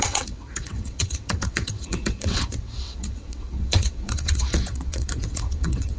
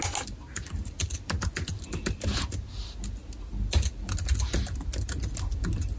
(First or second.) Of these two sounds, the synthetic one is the first